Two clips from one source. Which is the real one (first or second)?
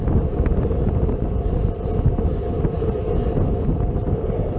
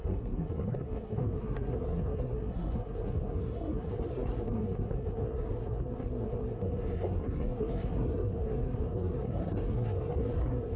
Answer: first